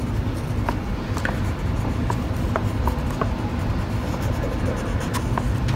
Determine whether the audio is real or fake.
real